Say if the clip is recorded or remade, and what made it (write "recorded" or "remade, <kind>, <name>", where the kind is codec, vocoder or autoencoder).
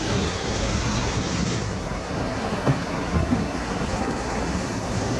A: remade, codec, SNAC